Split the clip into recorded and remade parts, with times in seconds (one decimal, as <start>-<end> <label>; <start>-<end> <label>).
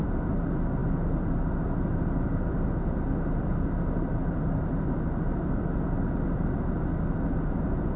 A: 0.0-8.0 recorded